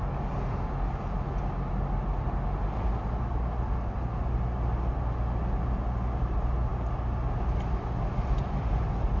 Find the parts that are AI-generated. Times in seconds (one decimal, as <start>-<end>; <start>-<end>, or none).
none